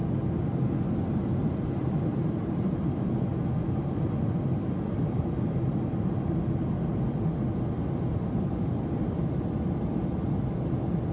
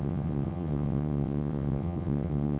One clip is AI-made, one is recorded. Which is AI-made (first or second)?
second